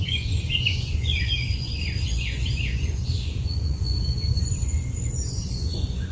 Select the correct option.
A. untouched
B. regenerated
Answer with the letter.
B